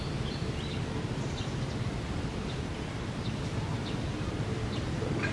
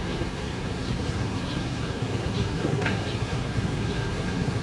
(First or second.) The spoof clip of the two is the second